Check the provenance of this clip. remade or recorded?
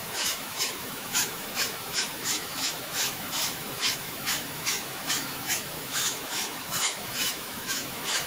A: remade